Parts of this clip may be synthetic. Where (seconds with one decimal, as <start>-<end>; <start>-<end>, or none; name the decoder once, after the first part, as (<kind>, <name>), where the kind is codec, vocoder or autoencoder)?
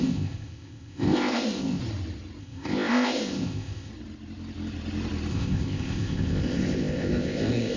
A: 0.0-1.8 (codec, ZipCodec); 2.4-3.9; 5.3-7.8